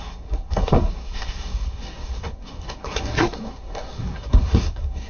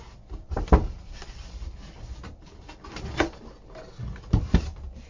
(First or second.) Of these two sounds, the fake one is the first